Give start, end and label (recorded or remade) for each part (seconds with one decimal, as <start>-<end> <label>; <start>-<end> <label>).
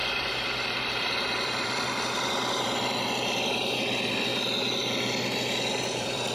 0.0-4.3 remade; 4.3-5.8 recorded; 5.8-6.3 remade